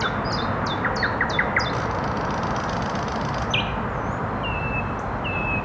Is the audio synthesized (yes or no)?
no